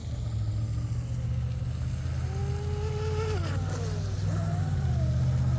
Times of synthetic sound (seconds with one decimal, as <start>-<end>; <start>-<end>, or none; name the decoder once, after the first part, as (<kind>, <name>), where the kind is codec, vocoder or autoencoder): none